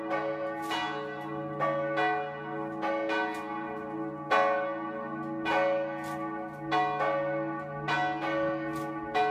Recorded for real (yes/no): yes